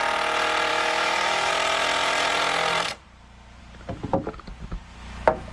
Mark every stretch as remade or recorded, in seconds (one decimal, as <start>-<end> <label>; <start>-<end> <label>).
0.0-0.7 recorded; 0.7-1.5 remade; 1.5-5.5 recorded